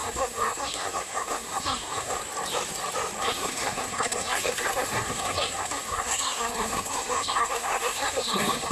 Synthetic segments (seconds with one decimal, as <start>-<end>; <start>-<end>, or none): 0.0-2.2; 3.2-8.7